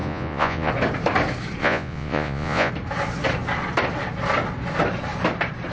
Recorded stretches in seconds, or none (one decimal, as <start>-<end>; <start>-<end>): 0.7-1.6; 2.7-5.7